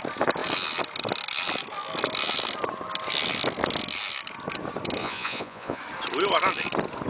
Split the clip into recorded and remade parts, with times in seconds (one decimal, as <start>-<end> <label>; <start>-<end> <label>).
0.0-5.0 recorded; 5.0-5.8 remade; 5.8-7.1 recorded